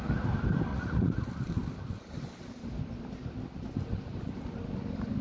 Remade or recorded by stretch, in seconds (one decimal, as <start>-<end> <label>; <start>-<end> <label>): 0.0-0.7 recorded; 0.7-1.2 remade; 1.2-5.2 recorded